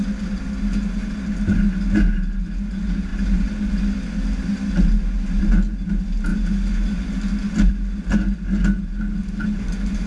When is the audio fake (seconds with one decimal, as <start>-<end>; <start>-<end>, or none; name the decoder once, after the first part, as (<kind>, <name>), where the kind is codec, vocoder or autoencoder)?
none